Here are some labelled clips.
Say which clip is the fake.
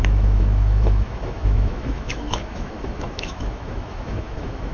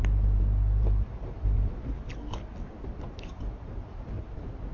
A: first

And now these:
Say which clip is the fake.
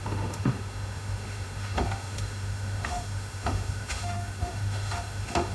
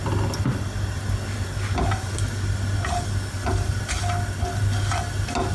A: first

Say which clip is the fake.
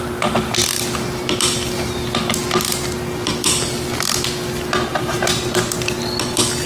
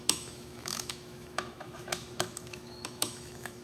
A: second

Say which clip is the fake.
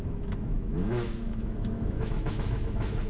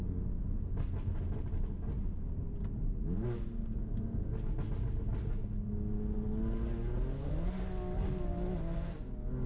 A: first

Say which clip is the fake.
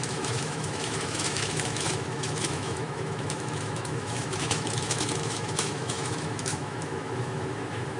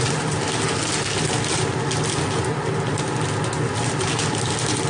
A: first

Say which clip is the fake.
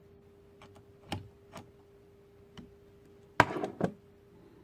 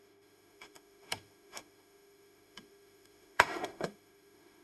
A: second